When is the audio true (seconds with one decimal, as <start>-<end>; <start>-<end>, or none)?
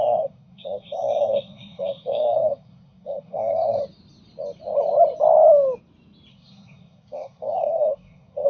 3.8-6.3